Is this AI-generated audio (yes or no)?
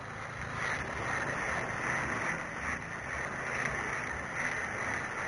no